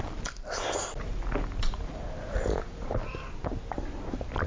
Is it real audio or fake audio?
real